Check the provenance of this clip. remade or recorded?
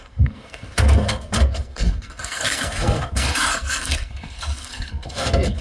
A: remade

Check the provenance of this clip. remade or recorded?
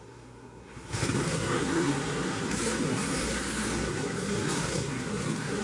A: remade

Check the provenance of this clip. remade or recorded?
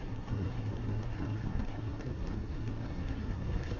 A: remade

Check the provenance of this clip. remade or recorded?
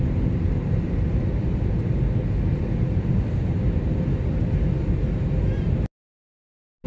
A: recorded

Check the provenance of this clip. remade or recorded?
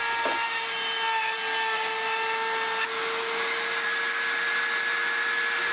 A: recorded